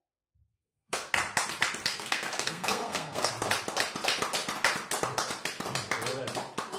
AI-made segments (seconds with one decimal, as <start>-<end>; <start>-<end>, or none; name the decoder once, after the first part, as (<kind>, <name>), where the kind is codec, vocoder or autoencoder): 0.5-1.1 (codec, SNAC); 1.9-3.3